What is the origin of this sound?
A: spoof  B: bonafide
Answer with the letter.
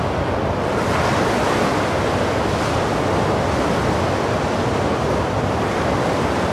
B